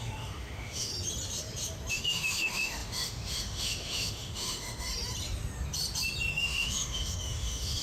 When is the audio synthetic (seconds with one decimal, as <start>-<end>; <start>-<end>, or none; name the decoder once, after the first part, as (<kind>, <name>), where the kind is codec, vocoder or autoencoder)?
0.0-0.9 (autoencoder, DAC-VAE); 1.9-4.9; 6.3-7.8